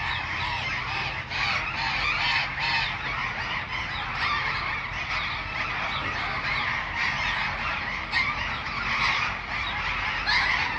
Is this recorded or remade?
recorded